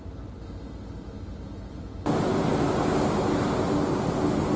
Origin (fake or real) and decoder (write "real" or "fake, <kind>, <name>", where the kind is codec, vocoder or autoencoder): real